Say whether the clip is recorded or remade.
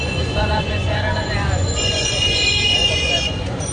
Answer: remade